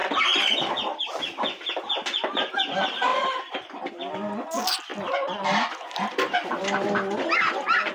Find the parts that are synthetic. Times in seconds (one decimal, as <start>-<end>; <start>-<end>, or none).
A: 3.1-4.1; 4.9-6.6